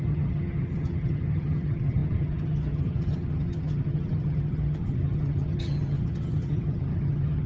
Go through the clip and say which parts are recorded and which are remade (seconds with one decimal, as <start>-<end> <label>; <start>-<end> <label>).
0.0-7.5 remade